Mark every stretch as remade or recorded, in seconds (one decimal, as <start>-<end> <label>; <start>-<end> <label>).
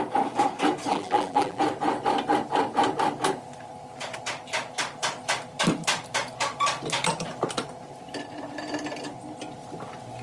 0.0-0.9 recorded; 0.9-1.6 remade; 1.6-10.2 recorded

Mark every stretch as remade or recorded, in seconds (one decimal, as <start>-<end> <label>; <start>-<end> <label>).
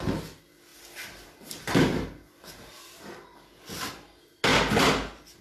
0.0-0.7 recorded; 0.7-3.9 remade; 3.9-5.4 recorded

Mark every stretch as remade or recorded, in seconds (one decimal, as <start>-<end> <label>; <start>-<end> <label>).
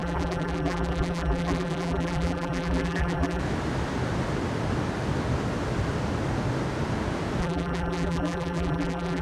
0.0-3.4 remade; 3.4-7.4 recorded; 7.4-9.2 remade